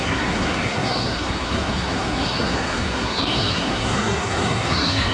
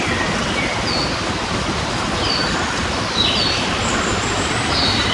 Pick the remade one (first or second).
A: first